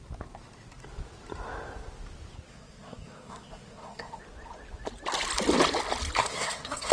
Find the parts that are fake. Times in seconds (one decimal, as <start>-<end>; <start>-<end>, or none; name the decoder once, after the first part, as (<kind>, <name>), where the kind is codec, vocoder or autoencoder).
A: 2.5-4.2 (codec, SNAC); 6.2-6.9